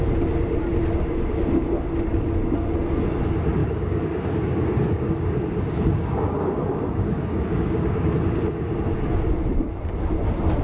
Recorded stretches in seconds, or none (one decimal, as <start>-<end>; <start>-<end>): 0.0-3.6; 8.1-10.6